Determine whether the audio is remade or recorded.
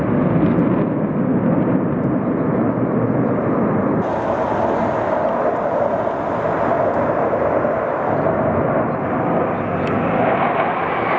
recorded